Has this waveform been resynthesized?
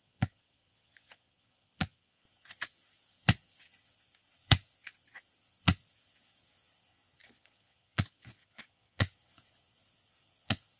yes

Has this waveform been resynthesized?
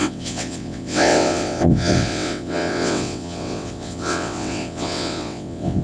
yes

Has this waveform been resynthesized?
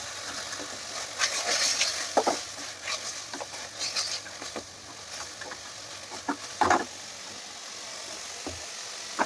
no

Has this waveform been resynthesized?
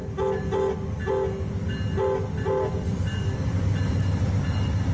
no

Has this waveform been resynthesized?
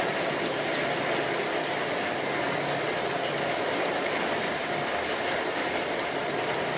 no